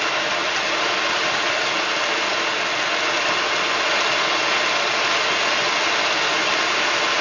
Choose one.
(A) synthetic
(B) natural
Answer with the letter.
B